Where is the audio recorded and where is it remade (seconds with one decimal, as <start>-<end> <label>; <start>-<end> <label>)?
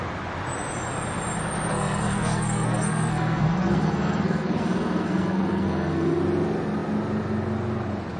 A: 0.0-1.7 recorded; 1.7-6.2 remade; 6.2-8.2 recorded